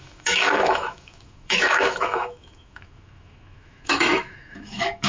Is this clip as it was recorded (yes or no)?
no